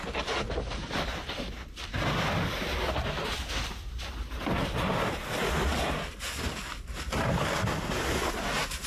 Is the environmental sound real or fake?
real